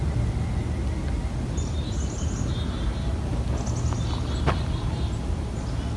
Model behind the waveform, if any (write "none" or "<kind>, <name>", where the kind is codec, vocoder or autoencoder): none